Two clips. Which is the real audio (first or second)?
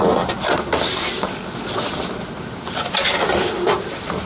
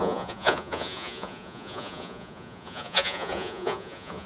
first